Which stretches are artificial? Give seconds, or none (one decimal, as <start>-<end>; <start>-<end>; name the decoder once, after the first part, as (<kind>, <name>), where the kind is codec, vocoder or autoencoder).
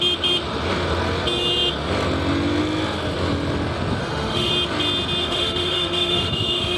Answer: 4.0-4.5 (autoencoder, DAC-VAE); 5.2-6.8